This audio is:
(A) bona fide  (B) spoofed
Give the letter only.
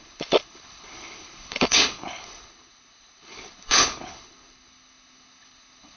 B